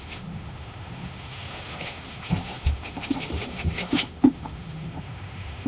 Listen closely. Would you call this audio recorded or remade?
remade